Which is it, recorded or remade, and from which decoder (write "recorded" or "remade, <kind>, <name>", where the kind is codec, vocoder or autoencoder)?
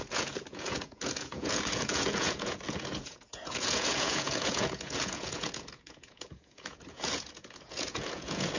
remade, vocoder, Vocos